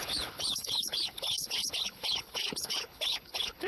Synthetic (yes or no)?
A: yes